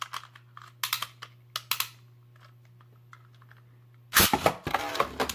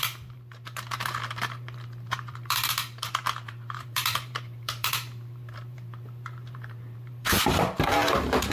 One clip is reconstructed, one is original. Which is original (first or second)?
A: first